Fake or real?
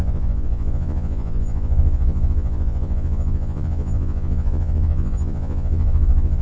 fake